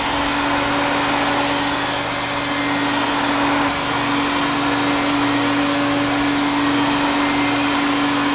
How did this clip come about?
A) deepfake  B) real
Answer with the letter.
B